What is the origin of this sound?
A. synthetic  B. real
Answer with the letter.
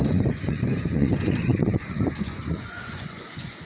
A